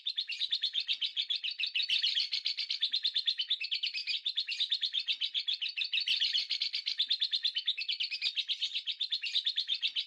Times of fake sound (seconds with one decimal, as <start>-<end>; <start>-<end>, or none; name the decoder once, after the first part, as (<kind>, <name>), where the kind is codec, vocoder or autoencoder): none